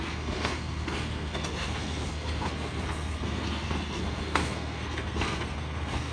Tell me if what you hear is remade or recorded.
remade